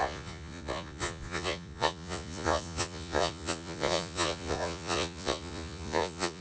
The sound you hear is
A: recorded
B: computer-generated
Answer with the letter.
B